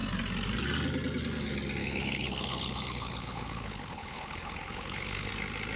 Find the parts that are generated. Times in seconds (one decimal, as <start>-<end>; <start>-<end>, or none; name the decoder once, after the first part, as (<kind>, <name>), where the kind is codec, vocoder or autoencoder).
1.8-5.3 (codec, HILCodec)